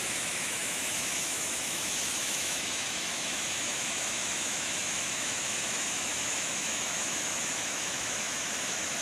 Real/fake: fake